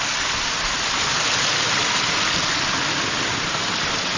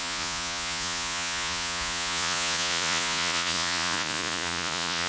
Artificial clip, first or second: second